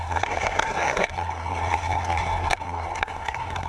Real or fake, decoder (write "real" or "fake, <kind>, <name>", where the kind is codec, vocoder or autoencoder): fake, codec, SNAC